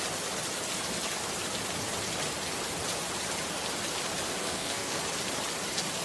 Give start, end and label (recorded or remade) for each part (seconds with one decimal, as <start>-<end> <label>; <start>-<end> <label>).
0.0-4.4 recorded; 4.4-5.0 remade; 5.0-6.0 recorded